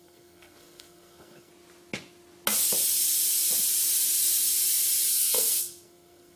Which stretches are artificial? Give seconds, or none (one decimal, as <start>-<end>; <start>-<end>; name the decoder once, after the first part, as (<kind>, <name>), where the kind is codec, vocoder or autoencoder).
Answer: 0.0-1.5 (codec, SNAC); 5.1-6.4